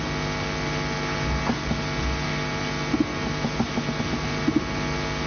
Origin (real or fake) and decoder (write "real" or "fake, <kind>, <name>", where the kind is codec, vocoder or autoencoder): real